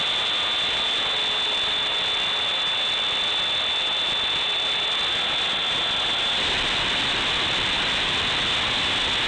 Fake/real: real